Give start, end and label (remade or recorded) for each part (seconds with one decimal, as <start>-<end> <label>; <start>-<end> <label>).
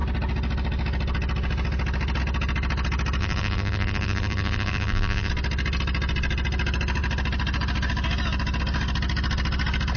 0.0-3.2 recorded; 3.2-5.3 remade; 5.3-10.0 recorded